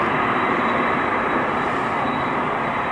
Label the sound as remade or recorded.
remade